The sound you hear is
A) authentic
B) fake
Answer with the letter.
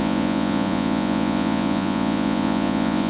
B